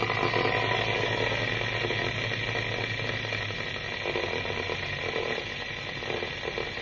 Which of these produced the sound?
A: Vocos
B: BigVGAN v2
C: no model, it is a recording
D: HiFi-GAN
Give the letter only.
C